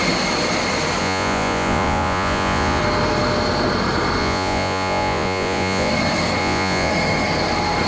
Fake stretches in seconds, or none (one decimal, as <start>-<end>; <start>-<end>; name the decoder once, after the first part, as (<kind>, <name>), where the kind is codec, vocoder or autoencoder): 1.0-2.8 (vocoder, Vocos); 4.2-5.9; 6.4-6.9